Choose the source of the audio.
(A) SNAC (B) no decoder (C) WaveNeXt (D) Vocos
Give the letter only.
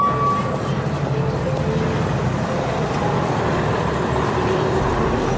B